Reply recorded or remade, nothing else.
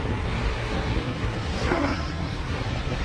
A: remade